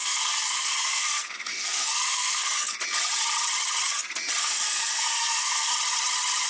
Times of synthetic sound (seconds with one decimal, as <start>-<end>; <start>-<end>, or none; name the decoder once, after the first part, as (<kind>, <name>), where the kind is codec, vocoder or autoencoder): 0.0-2.8 (codec, SNAC); 4.4-5.7